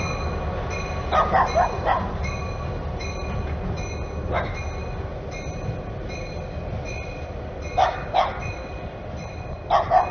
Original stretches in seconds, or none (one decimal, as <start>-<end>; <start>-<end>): 0.0-10.1